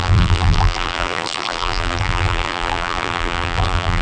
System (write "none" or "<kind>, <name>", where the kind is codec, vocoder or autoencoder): vocoder, BigVGAN v2